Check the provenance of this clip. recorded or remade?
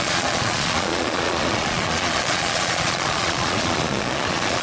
remade